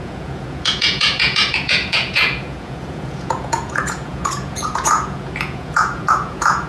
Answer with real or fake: fake